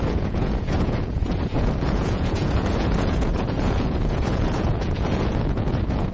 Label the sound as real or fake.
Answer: fake